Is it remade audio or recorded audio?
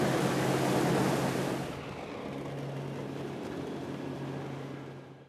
recorded